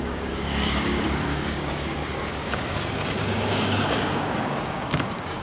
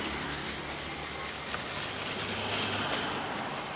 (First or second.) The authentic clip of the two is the second